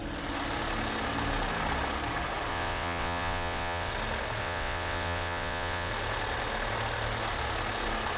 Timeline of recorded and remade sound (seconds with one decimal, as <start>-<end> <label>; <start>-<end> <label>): 0.0-2.5 recorded; 2.5-3.9 remade; 3.9-4.4 recorded; 4.4-5.9 remade; 5.9-8.2 recorded